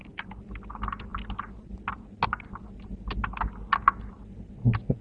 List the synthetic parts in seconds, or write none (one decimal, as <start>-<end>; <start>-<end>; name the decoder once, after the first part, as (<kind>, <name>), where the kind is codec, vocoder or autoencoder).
none